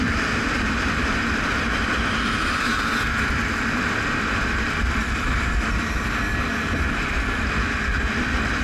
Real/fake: fake